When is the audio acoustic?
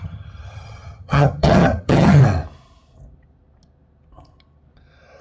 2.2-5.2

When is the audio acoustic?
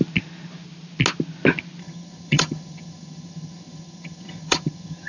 0.0-1.8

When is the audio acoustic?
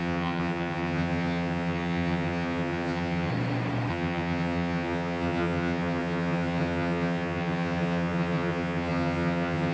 3.3-3.9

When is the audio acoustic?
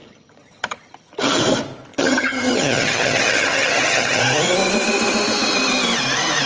1.4-1.9; 4.2-6.5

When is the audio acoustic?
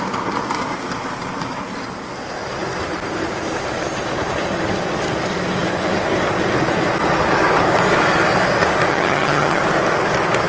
0.0-8.9; 9.6-10.5